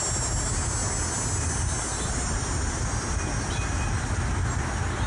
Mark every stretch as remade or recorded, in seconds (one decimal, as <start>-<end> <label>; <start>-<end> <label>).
0.0-5.1 recorded